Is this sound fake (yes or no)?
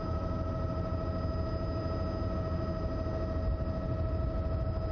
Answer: no